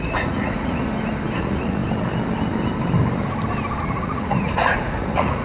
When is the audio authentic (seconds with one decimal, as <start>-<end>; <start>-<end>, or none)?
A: 0.8-1.4; 1.8-3.8